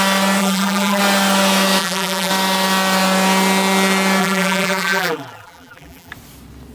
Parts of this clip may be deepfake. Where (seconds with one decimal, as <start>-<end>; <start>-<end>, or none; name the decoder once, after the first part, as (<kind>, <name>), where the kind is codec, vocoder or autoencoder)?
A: 0.4-1.0 (vocoder, BigVGAN v2); 1.8-2.3; 4.2-6.1